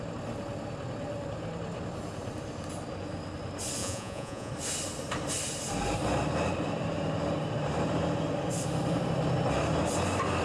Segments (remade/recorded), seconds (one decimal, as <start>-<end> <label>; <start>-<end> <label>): 0.0-3.8 recorded; 3.8-4.5 remade; 4.5-10.4 recorded